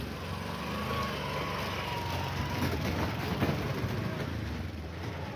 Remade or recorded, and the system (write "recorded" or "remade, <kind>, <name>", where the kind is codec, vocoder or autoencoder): recorded